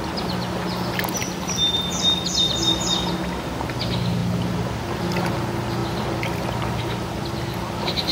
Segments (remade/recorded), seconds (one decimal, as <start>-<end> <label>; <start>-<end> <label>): 0.0-4.2 recorded; 4.2-4.9 remade; 4.9-5.8 recorded; 5.8-6.3 remade; 6.3-8.1 recorded